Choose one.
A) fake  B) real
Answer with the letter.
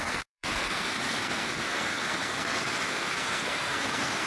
A